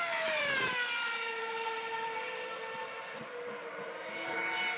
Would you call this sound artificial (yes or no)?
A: yes